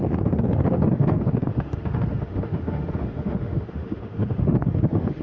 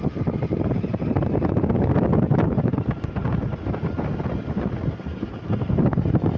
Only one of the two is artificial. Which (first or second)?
first